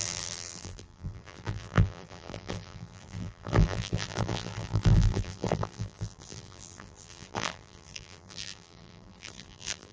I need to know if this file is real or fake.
fake